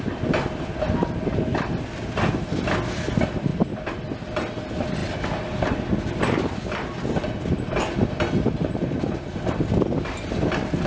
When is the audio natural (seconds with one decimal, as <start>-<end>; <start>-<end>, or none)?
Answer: 0.0-10.9